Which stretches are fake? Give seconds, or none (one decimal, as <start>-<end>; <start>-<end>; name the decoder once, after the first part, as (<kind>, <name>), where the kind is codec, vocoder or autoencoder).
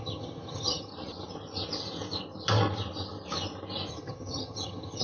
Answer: 0.0-0.9 (vocoder, HiFi-GAN); 3.9-5.0